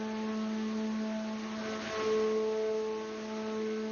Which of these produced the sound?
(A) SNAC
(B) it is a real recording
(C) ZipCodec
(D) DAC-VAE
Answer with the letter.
B